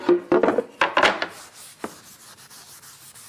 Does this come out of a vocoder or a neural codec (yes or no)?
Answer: no